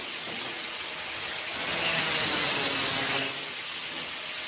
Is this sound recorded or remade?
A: recorded